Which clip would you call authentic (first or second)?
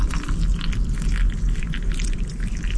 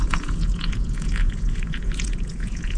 first